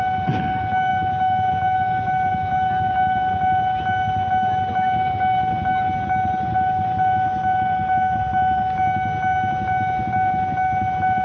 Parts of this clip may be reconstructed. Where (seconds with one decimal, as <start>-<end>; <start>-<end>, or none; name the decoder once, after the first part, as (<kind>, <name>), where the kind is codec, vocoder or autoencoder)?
none